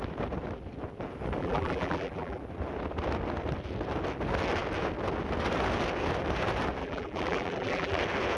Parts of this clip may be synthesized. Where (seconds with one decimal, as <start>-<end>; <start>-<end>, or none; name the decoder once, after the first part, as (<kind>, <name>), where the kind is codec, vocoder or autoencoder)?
1.4-2.4 (vocoder, BigVGAN v2); 6.8-8.0